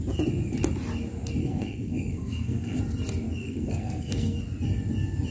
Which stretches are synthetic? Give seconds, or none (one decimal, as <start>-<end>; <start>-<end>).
1.4-2.8; 3.4-4.4